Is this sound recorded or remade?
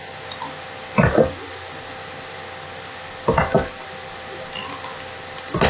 recorded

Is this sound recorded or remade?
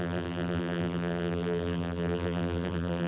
remade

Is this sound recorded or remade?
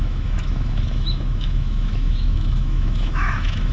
remade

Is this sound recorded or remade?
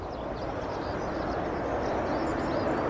recorded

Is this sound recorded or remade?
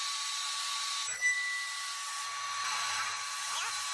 recorded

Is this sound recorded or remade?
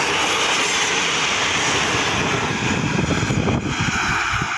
recorded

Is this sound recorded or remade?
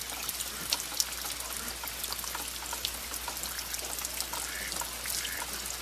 recorded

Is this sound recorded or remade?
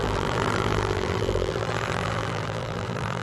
remade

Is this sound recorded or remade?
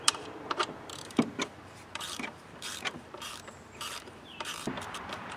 remade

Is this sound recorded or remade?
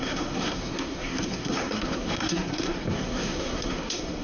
remade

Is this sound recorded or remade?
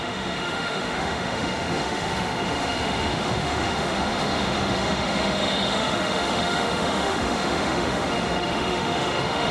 remade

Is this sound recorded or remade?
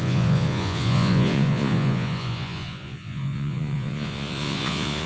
remade